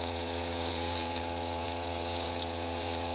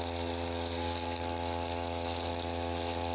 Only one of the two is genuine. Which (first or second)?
second